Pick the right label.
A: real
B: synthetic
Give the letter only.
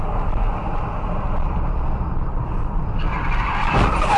A